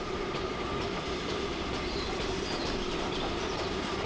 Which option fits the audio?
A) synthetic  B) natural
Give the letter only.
A